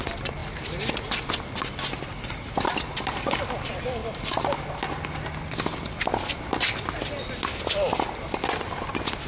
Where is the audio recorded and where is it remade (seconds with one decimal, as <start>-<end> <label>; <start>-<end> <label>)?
0.0-9.3 recorded